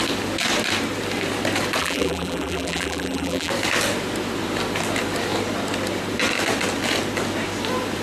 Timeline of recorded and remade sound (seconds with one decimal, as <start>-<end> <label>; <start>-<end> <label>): 0.0-1.8 recorded; 1.8-3.5 remade; 3.5-8.0 recorded

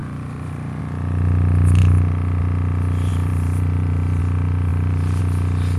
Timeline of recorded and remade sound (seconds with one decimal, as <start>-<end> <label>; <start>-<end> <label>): 0.0-0.8 remade; 0.8-3.1 recorded; 3.1-4.2 remade; 4.2-4.7 recorded; 4.7-5.2 remade; 5.2-5.8 recorded

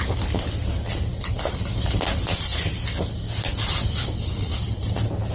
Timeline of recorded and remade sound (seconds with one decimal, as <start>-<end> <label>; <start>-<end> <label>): 0.0-3.5 recorded; 3.5-4.8 remade; 4.8-5.3 recorded

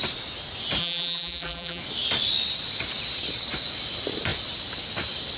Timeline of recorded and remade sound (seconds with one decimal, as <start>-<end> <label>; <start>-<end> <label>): 0.0-0.8 recorded; 0.8-1.8 remade; 1.8-5.4 recorded

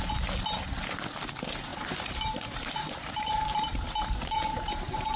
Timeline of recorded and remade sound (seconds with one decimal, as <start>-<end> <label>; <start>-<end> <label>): 0.0-1.7 recorded; 1.7-4.8 remade; 4.8-5.2 recorded